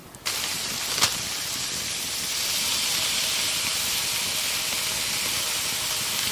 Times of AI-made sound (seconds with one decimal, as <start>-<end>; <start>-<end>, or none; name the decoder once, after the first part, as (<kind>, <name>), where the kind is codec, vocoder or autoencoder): 0.0-3.8 (vocoder, BigVGAN v2)